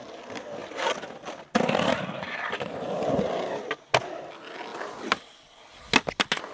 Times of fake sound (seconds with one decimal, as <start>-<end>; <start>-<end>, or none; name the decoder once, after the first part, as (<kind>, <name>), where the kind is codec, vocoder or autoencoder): 0.6-3.1 (vocoder, BigVGAN v2); 4.7-5.4